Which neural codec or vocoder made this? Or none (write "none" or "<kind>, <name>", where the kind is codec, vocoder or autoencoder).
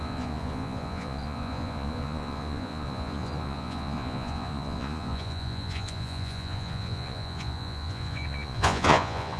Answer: vocoder, Vocos